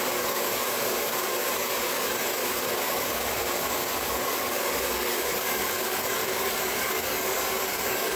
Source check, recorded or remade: remade